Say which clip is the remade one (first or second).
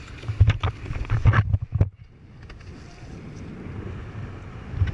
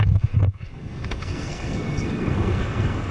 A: second